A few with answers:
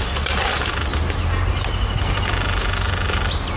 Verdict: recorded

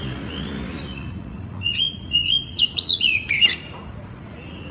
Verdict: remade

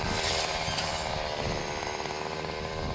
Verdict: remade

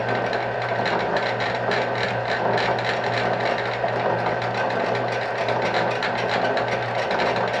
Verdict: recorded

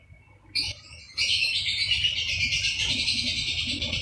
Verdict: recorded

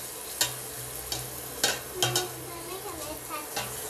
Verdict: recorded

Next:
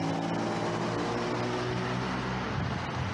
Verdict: recorded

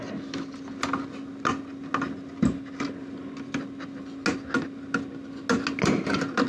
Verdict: recorded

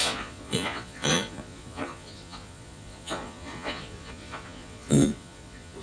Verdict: remade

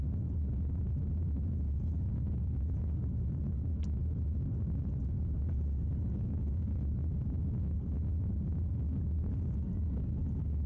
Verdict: recorded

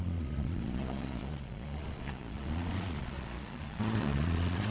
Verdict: remade